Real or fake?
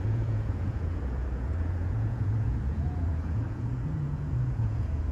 fake